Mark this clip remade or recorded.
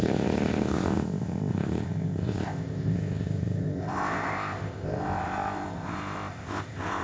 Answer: remade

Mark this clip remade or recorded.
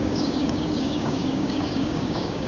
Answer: remade